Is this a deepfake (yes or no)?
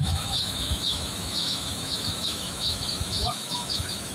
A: yes